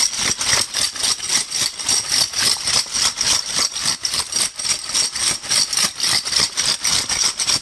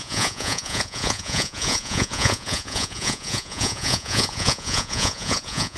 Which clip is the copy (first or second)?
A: second